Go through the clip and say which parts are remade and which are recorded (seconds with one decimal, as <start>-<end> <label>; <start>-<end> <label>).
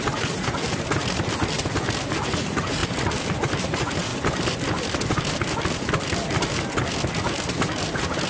0.0-0.6 remade; 0.6-2.2 recorded; 2.2-2.8 remade; 2.8-3.6 recorded; 3.6-4.1 remade; 4.1-8.3 recorded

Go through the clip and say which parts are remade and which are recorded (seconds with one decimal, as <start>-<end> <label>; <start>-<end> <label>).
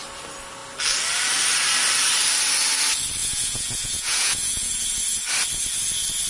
0.0-3.2 recorded; 3.2-4.8 remade; 4.8-6.3 recorded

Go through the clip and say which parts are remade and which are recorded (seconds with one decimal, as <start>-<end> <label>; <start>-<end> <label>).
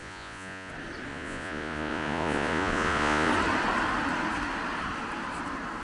0.0-0.7 remade; 0.7-1.1 recorded; 1.1-3.3 remade; 3.3-5.8 recorded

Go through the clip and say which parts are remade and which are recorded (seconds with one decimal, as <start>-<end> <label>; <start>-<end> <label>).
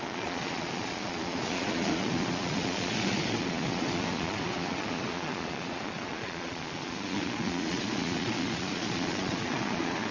0.0-10.1 remade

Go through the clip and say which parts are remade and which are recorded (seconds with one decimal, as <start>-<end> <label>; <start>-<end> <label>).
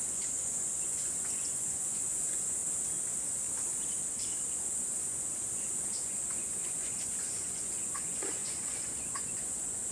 0.0-2.6 remade; 2.6-4.5 recorded; 4.5-9.9 remade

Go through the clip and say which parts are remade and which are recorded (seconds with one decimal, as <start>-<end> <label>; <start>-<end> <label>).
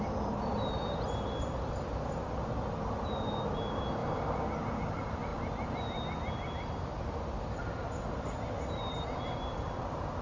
0.0-10.2 recorded